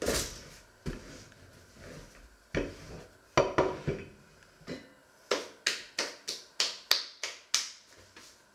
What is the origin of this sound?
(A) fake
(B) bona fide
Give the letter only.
B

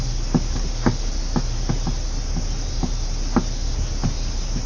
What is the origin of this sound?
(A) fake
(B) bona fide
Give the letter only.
B